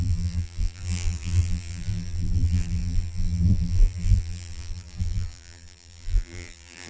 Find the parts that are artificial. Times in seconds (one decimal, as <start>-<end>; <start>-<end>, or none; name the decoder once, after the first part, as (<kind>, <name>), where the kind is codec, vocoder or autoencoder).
0.0-6.9 (vocoder, BigVGAN v2)